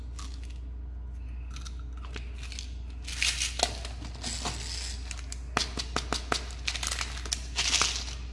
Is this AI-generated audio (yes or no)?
no